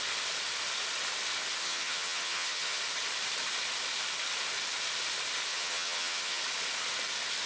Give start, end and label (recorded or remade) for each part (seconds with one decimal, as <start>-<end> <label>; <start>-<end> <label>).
0.0-1.6 recorded; 1.6-2.8 remade; 2.8-5.5 recorded; 5.5-6.4 remade; 6.4-7.5 recorded